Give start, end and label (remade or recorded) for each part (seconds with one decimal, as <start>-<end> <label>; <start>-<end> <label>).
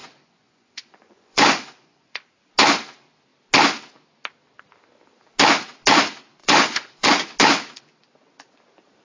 0.0-2.3 remade; 2.3-6.4 recorded; 6.4-7.1 remade; 7.1-9.0 recorded